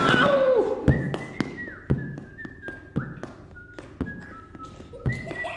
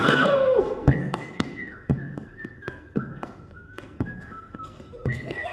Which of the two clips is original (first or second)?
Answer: first